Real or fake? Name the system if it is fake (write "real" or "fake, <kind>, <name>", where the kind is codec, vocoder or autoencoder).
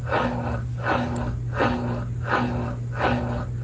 real